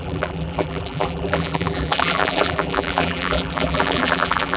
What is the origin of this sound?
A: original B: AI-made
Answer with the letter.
B